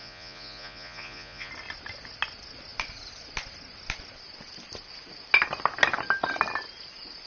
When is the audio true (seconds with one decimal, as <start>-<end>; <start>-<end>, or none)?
1.5-7.3